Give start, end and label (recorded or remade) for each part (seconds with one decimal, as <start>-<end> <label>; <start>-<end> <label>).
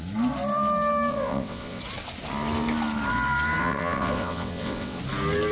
0.0-1.1 recorded; 1.1-1.8 remade; 1.8-3.6 recorded; 3.6-5.0 remade; 5.0-5.5 recorded